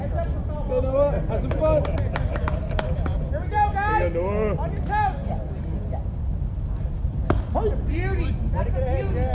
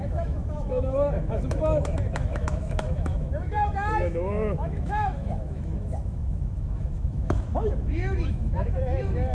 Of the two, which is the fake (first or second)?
second